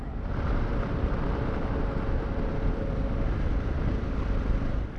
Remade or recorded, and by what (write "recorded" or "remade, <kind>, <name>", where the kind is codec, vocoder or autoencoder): recorded